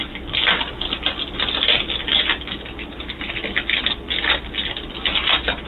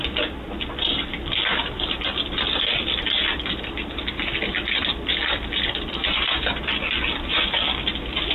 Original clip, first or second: first